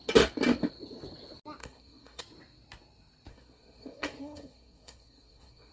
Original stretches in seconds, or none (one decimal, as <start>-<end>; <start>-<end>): 0.0-1.6; 2.2-3.3